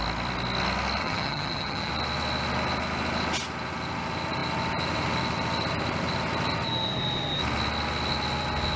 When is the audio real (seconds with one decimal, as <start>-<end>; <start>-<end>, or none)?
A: 0.0-1.0; 1.9-8.8